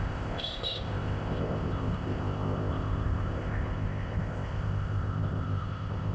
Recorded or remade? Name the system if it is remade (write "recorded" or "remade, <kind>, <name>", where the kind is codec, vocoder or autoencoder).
remade, codec, ZipCodec